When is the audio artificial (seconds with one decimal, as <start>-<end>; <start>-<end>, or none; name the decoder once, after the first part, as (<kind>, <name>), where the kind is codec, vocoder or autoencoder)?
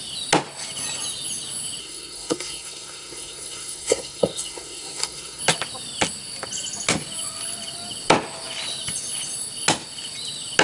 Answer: 1.8-5.4 (codec, SNAC)